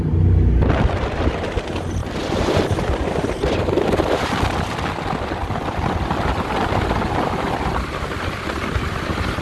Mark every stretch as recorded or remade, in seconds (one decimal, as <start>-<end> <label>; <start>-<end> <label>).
0.0-9.4 recorded